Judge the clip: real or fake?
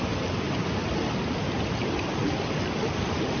real